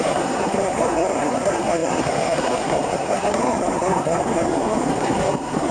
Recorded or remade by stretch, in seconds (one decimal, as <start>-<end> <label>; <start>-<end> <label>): 0.0-5.7 remade